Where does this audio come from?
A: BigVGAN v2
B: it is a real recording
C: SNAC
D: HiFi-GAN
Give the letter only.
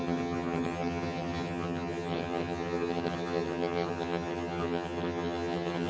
D